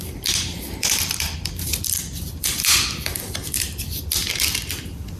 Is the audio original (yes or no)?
no